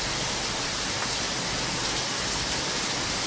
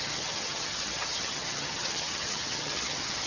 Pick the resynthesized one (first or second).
second